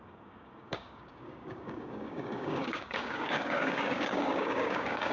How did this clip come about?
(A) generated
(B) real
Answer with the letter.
A